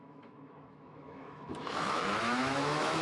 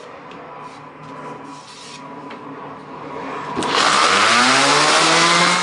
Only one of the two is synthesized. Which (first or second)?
first